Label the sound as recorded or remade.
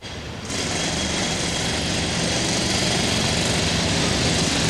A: recorded